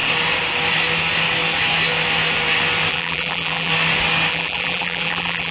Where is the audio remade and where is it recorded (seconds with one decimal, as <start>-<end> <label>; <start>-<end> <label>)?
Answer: 0.0-2.9 recorded; 2.9-3.7 remade; 3.7-4.3 recorded; 4.3-5.5 remade